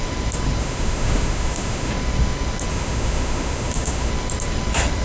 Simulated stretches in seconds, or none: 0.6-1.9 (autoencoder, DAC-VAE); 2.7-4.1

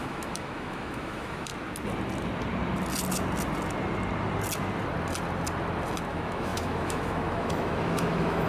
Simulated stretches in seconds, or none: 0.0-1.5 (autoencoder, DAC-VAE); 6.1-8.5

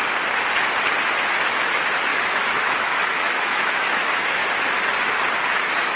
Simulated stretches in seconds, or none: 1.4-4.4 (autoencoder, DAC-VAE)

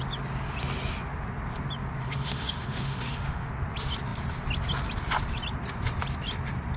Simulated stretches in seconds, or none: 2.0-3.5 (autoencoder, DAC-VAE)

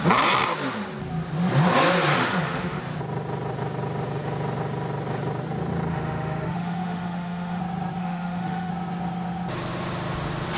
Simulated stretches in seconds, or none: 2.1-2.8 (autoencoder, DAC-VAE); 5.9-7.6; 8.0-8.7